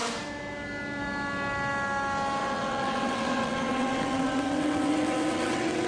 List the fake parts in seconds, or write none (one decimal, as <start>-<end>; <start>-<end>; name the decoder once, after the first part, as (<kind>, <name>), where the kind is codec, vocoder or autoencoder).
2.4-5.9 (vocoder, WaveNeXt)